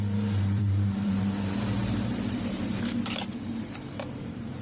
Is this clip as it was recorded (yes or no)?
no